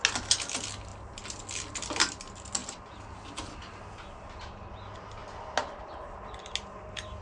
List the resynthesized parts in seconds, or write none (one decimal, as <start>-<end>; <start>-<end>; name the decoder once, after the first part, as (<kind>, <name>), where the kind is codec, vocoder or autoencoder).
none